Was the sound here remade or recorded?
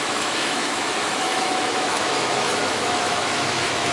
remade